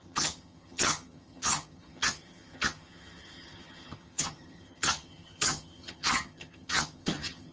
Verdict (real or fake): fake